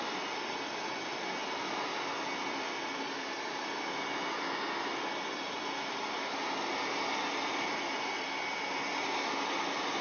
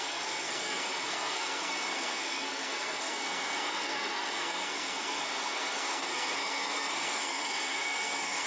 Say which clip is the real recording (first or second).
first